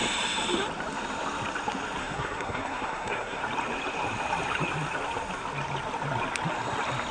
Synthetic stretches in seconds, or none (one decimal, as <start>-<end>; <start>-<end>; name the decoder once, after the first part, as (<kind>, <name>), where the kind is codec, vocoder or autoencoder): 2.0-3.4 (codec, SNAC)